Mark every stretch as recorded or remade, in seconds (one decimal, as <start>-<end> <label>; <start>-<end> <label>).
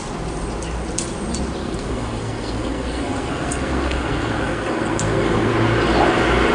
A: 0.0-1.6 recorded; 1.6-5.5 remade; 5.5-6.5 recorded